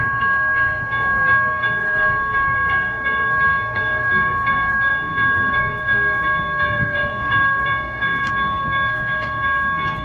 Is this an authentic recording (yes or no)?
no